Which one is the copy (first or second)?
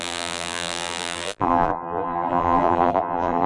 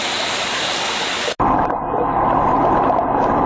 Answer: first